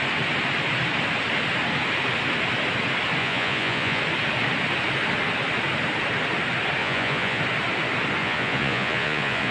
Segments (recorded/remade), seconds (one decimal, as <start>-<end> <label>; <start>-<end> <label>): 0.0-3.2 recorded; 3.2-4.0 remade; 4.0-6.8 recorded; 6.8-7.4 remade; 7.4-8.2 recorded; 8.2-9.5 remade